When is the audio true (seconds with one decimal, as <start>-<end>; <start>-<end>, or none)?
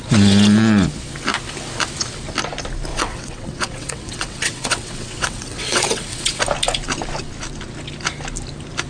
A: 0.0-2.9; 6.4-8.9